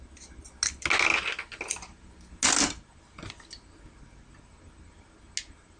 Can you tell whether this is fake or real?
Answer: real